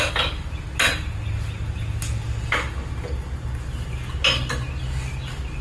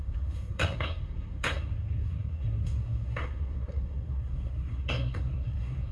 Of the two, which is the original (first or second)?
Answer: first